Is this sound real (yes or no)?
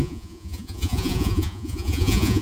no